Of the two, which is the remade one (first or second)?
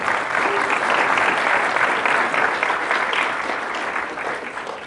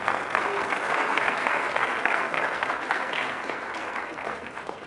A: second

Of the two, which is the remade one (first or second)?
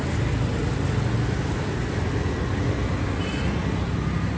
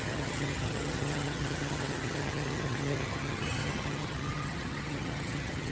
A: second